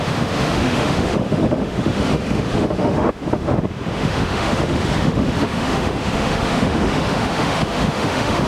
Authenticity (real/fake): fake